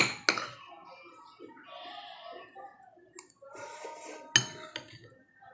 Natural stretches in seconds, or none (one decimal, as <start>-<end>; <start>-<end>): 0.0-5.5